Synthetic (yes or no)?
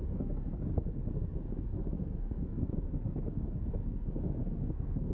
yes